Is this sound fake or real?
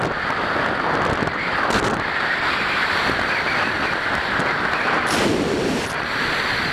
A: real